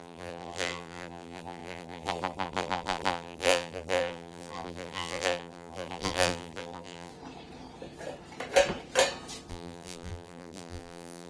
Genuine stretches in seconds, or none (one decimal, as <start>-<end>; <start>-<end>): 7.1-9.5